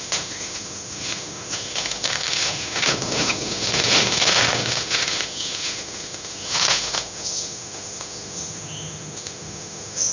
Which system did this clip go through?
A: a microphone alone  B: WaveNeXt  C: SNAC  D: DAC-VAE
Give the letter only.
D